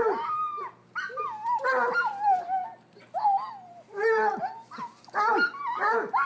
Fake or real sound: real